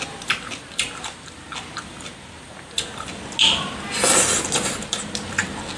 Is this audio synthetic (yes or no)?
no